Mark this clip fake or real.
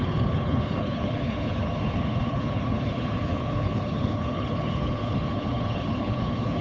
fake